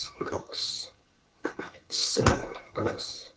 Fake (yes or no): yes